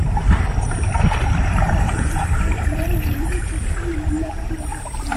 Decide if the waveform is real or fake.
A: fake